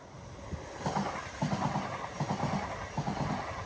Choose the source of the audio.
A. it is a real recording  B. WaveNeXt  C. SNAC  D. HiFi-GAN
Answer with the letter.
A